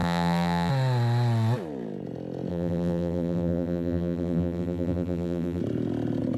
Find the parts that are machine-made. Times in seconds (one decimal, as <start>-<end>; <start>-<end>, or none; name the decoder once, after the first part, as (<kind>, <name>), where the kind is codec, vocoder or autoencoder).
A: 0.0-0.7 (vocoder, BigVGAN v2); 2.5-5.6